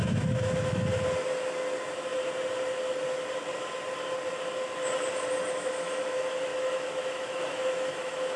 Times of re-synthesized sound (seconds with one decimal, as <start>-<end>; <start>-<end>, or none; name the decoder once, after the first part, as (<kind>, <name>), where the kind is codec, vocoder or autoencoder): 0.0-0.9 (autoencoder, DAC-VAE); 5.5-8.4